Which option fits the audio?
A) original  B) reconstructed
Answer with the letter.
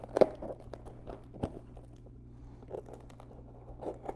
A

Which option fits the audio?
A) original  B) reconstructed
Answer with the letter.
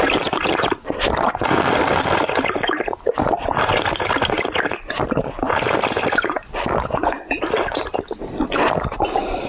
A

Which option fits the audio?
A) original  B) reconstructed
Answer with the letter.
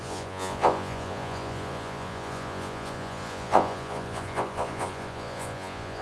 B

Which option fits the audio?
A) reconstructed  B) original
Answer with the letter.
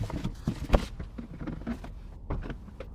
B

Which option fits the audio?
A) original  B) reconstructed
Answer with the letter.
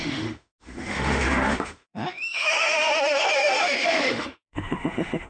B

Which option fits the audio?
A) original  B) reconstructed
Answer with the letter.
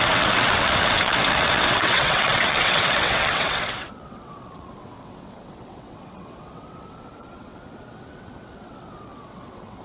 B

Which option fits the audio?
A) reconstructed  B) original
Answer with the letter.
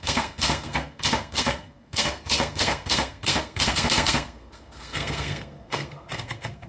A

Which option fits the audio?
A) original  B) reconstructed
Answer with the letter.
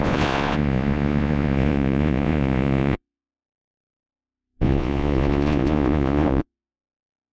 B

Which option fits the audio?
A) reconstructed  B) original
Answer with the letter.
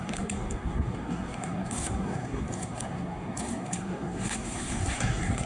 A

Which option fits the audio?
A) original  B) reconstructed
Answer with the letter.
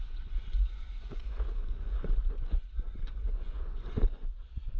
B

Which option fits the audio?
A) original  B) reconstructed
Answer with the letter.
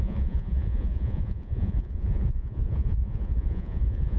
B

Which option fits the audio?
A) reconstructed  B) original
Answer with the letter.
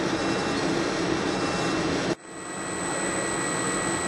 B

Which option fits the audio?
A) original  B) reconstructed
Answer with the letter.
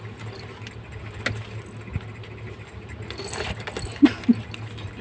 A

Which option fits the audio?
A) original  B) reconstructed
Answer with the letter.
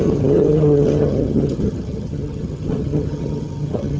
B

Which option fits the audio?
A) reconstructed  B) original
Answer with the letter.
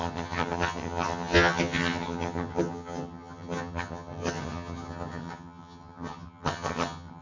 A